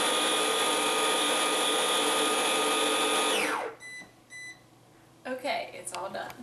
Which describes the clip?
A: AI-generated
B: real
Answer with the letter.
B